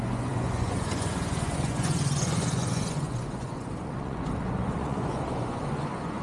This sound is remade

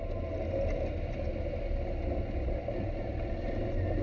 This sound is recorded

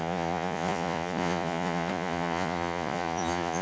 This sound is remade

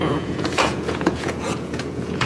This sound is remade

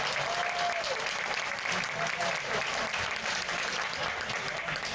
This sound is recorded